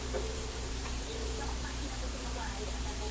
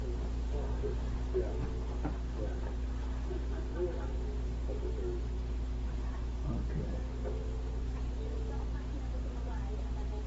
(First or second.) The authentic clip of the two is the second